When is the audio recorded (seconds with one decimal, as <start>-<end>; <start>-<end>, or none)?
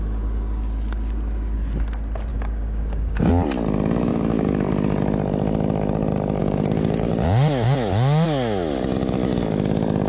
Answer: 0.0-2.3; 3.3-4.1; 4.7-6.4; 7.1-10.1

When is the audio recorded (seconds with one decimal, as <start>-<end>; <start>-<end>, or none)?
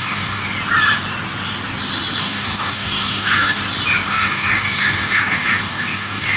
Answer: 0.4-2.2; 3.6-4.1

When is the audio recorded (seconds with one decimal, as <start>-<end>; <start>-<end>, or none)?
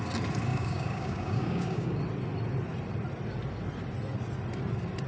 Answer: 0.0-0.5; 2.0-5.1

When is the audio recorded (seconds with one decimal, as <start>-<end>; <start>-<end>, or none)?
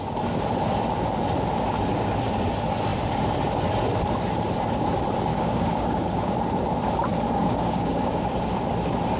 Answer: 0.0-5.3; 6.4-7.4; 8.3-9.2